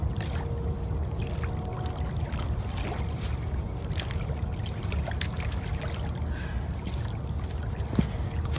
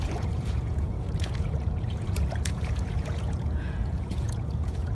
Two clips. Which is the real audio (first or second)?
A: first